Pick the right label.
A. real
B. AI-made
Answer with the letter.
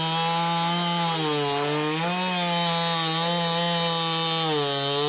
A